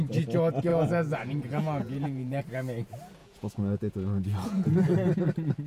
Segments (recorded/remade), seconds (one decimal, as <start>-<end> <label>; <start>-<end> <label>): 0.0-0.7 recorded; 0.7-2.4 remade; 2.4-3.2 recorded; 3.2-4.7 remade; 4.7-5.7 recorded

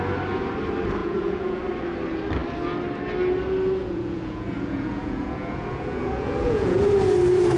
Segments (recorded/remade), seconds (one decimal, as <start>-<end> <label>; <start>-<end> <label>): 0.0-1.0 recorded; 1.0-1.6 remade; 1.6-3.8 recorded; 3.8-6.9 remade; 6.9-7.6 recorded